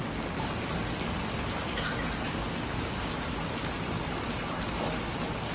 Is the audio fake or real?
real